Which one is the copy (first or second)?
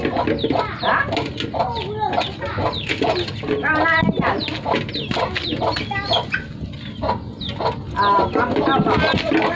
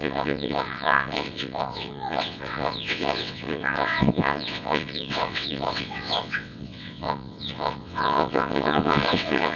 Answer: second